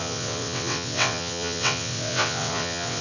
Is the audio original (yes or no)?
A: no